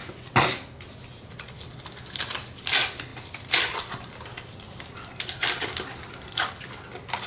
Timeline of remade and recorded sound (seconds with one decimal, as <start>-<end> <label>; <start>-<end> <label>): 0.0-3.1 recorded; 3.1-6.8 remade; 6.8-7.3 recorded